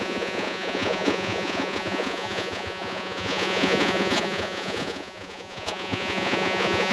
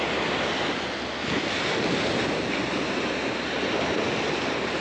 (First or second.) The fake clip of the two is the first